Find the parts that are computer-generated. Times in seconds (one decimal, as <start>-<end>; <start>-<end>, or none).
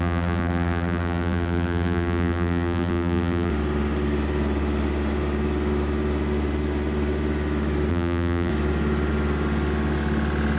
0.0-3.5; 7.9-8.5